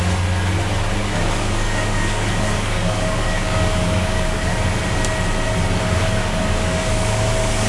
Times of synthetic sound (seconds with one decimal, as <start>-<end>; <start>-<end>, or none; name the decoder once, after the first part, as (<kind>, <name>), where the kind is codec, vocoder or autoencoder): 1.0-4.6 (codec, DAC); 6.0-7.7